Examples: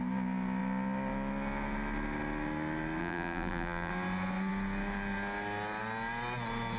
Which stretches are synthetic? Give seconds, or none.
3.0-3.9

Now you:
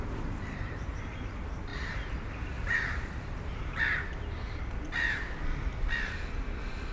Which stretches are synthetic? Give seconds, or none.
1.7-3.8

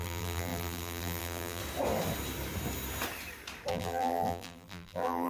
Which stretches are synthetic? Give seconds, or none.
0.0-1.6; 3.7-5.3

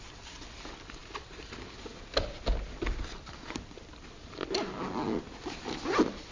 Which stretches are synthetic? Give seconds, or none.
none

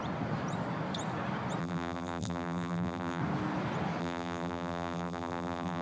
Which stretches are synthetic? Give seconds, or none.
1.6-3.2; 4.0-5.8